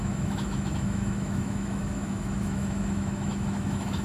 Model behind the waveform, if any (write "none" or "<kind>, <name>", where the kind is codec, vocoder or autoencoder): autoencoder, DAC-VAE